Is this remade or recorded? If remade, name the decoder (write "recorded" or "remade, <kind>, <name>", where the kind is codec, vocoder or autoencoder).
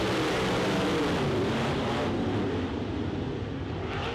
recorded